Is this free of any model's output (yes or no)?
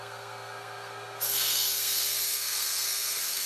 no